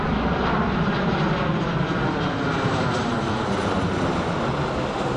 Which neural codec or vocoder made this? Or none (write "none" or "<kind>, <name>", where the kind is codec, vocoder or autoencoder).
none